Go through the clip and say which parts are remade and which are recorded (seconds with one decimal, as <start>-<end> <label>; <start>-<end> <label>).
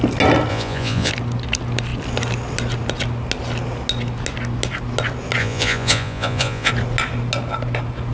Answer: 0.0-0.5 recorded; 0.5-1.1 remade; 1.1-5.4 recorded; 5.4-6.7 remade; 6.7-8.1 recorded